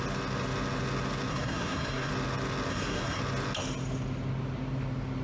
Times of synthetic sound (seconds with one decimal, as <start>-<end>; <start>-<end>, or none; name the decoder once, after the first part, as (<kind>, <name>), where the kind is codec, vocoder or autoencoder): 1.3-2.1 (codec, SNAC); 2.7-3.2